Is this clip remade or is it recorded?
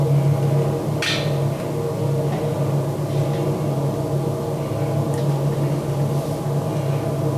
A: recorded